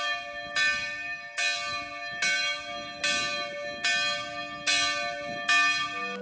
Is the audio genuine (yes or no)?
yes